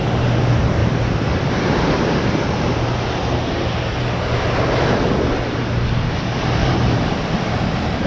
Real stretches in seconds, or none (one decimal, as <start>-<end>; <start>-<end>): 0.0-0.8; 5.1-6.6